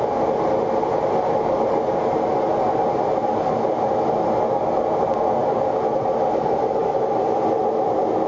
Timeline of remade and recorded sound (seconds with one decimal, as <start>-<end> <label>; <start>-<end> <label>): 0.0-8.3 recorded